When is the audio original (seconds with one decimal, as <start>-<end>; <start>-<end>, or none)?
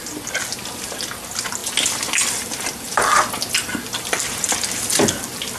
0.0-5.6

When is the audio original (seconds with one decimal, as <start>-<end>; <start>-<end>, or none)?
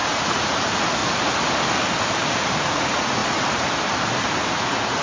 1.0-2.6; 3.2-4.5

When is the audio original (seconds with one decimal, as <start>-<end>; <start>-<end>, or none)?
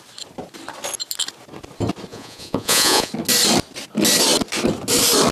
0.0-2.1; 3.1-5.3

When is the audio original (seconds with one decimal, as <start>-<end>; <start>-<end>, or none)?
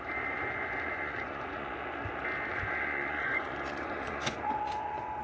1.7-2.5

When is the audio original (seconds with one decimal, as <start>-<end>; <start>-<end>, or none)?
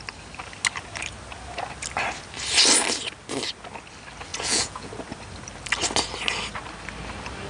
0.0-4.3; 4.9-7.5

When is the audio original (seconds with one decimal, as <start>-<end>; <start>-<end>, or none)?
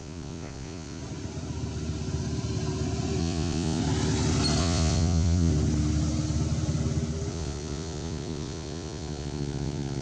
1.0-3.2; 3.8-4.6; 5.5-7.3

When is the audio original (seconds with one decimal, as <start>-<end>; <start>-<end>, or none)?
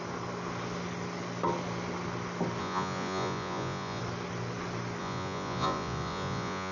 0.0-2.6; 4.0-5.0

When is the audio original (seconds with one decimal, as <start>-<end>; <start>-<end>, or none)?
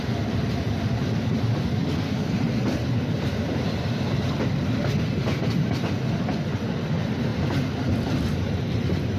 0.0-9.2